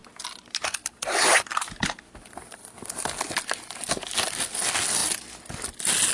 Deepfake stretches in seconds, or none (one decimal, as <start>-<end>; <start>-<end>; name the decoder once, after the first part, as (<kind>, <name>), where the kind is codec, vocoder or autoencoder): none